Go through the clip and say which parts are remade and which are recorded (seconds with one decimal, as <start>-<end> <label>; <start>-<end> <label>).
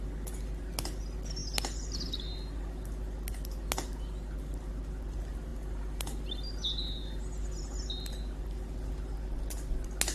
0.0-10.1 recorded